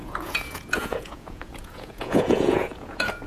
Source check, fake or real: fake